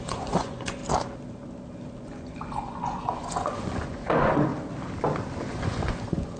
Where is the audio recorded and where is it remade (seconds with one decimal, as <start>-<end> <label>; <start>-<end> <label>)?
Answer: 0.0-0.8 remade; 0.8-2.0 recorded; 2.0-4.5 remade; 4.5-5.5 recorded; 5.5-6.4 remade